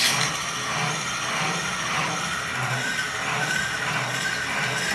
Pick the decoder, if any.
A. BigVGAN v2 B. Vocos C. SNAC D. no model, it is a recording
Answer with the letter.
D